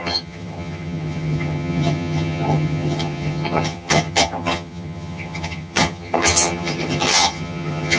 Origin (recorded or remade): remade